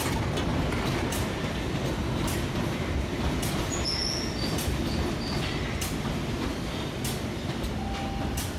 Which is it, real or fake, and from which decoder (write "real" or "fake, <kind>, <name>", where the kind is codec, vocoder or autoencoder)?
real